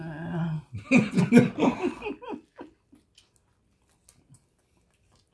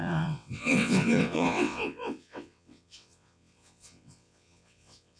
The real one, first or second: first